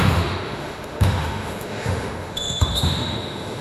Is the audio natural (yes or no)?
no